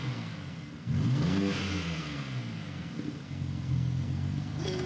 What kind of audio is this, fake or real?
fake